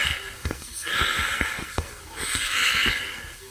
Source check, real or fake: fake